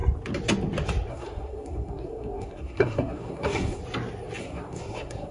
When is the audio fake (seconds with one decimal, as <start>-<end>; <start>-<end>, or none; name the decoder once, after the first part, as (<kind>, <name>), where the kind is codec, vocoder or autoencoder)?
1.1-3.8 (codec, SNAC); 4.4-5.3